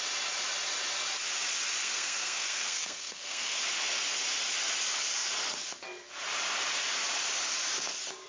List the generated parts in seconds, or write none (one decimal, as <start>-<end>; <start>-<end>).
1.8-3.6